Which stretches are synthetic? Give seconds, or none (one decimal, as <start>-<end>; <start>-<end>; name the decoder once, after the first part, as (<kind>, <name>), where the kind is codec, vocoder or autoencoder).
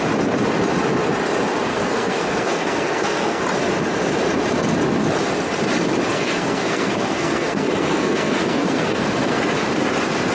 1.7-3.4 (codec, SNAC); 6.1-9.4